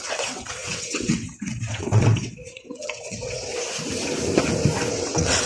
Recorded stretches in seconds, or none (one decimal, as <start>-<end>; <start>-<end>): 3.5-4.9